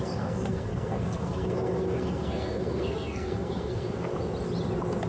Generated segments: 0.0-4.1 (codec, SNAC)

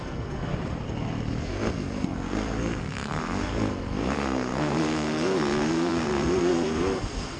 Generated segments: 0.0-0.5 (codec, SNAC); 1.4-7.4

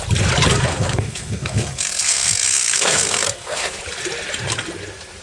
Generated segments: 0.7-3.8 (codec, SNAC)

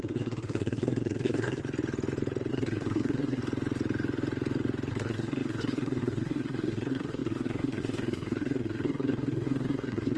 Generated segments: 0.0-1.6 (codec, SNAC); 2.5-3.4; 4.9-10.2